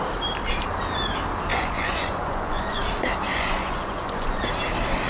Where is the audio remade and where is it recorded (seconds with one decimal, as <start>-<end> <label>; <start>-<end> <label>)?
0.0-1.5 recorded; 1.5-2.8 remade; 2.8-3.3 recorded; 3.3-4.4 remade; 4.4-5.1 recorded